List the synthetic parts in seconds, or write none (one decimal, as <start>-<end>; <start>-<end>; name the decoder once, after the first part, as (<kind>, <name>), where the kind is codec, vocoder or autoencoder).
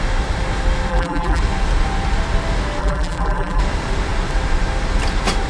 0.9-1.4 (vocoder, BigVGAN v2); 2.8-3.6